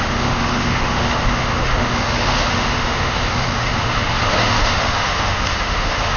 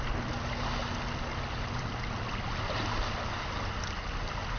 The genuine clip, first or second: second